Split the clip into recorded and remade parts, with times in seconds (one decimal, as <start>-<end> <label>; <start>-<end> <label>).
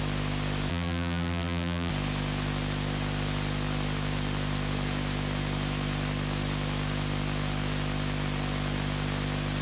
0.0-0.7 recorded; 0.7-1.9 remade; 1.9-9.6 recorded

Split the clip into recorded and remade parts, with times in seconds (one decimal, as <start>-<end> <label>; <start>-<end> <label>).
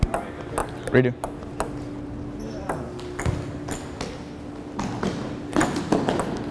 0.0-6.5 recorded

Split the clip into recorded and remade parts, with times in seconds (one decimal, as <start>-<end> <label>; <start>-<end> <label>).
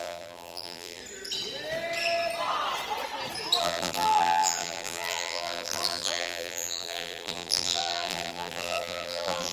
0.0-1.0 remade; 1.0-3.6 recorded; 3.6-9.5 remade